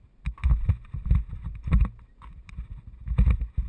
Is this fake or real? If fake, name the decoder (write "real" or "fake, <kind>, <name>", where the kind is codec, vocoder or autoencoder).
real